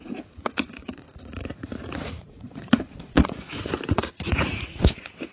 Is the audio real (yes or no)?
no